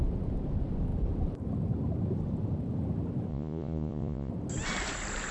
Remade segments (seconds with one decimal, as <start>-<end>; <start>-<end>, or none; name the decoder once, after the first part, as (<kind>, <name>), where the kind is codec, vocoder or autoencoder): 3.3-4.3 (vocoder, Vocos)